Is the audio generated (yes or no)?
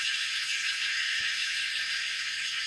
yes